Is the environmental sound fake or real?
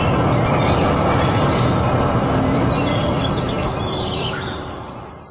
fake